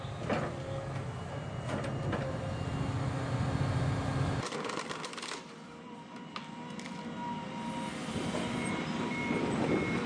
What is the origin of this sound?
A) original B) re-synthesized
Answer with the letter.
A